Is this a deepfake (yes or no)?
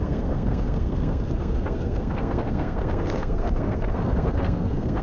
yes